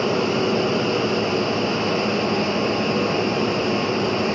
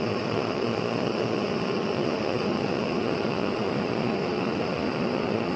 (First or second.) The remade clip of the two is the second